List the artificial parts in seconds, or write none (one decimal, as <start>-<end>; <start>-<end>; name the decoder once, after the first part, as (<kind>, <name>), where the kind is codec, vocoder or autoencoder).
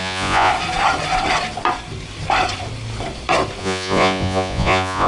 0.0-0.5 (vocoder, Vocos); 3.6-5.1